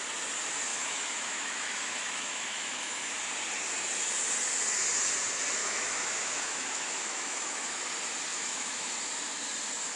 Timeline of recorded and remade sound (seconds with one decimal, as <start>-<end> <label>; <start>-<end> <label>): 0.0-0.7 recorded; 0.7-3.1 remade; 3.1-5.6 recorded; 5.6-7.8 remade; 7.8-8.3 recorded; 8.3-8.9 remade; 8.9-10.0 recorded

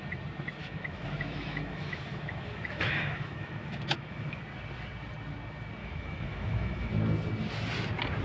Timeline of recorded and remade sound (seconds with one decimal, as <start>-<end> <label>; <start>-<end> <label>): 0.0-0.6 recorded; 0.6-4.4 remade; 4.4-5.8 recorded; 5.8-6.9 remade; 6.9-8.2 recorded

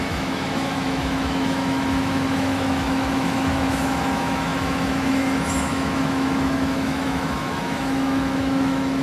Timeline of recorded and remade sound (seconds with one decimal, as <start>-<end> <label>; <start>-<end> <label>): 0.0-9.0 remade

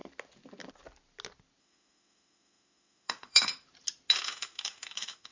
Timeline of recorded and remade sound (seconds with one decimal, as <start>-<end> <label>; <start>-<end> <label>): 0.0-1.6 recorded; 1.6-3.5 remade; 3.5-4.1 recorded; 4.1-5.3 remade

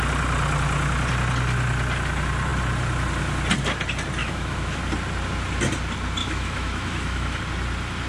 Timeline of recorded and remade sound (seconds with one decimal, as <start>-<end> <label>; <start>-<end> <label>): 0.0-4.2 recorded; 4.2-4.8 remade; 4.8-6.2 recorded; 6.2-7.4 remade; 7.4-8.1 recorded

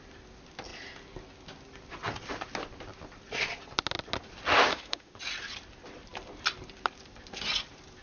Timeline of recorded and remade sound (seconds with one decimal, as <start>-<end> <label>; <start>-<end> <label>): 0.0-4.7 recorded; 4.7-5.2 remade; 5.2-8.0 recorded